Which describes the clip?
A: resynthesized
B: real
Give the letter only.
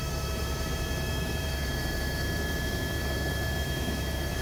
A